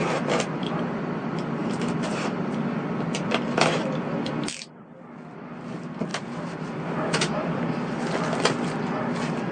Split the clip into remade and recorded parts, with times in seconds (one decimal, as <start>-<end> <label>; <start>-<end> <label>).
0.0-1.6 recorded; 1.6-2.6 remade; 2.6-6.1 recorded; 6.1-7.6 remade; 7.6-9.5 recorded